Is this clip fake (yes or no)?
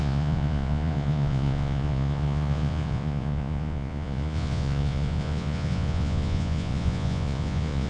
yes